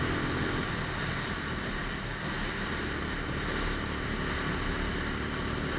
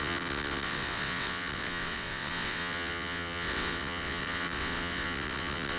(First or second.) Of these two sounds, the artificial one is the second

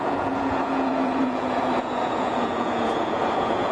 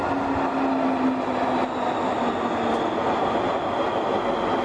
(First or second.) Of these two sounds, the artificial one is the first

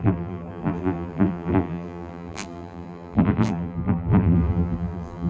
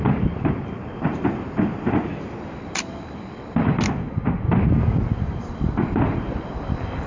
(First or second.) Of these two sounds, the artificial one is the first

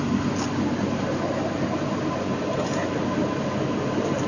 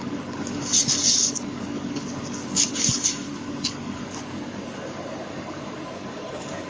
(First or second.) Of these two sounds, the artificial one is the second